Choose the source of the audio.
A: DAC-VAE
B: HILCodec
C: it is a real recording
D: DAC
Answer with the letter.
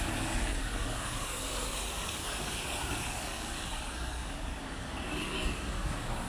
D